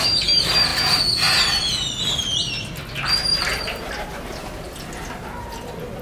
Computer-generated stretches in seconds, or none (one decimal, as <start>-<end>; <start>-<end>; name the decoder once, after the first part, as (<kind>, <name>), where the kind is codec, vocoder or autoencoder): none